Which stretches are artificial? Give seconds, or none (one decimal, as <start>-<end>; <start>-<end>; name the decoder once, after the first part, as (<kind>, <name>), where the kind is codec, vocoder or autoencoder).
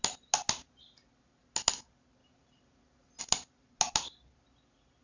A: none